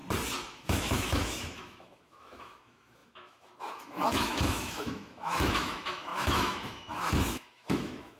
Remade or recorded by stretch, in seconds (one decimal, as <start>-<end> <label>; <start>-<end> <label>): 0.0-0.5 recorded; 0.5-8.2 remade